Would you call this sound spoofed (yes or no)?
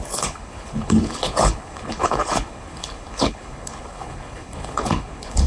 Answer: yes